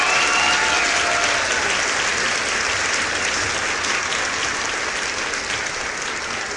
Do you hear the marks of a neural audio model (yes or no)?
no